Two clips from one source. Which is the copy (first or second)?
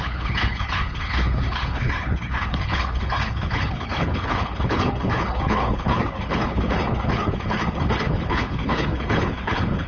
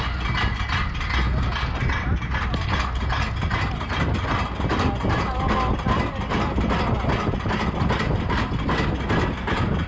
first